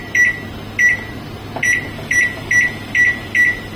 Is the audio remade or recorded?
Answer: recorded